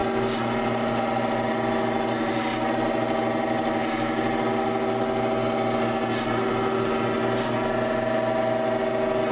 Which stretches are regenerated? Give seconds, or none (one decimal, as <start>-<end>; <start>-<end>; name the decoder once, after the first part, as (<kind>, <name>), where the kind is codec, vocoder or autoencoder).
none